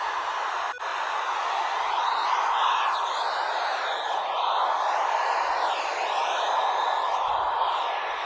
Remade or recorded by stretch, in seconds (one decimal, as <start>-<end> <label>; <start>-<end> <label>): 0.0-0.9 recorded; 0.9-1.6 remade; 1.6-8.3 recorded